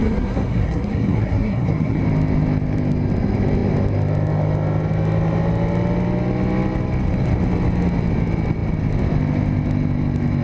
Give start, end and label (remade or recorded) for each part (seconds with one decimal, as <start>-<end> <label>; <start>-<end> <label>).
0.0-2.0 remade; 2.0-10.4 recorded